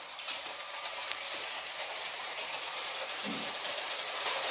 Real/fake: fake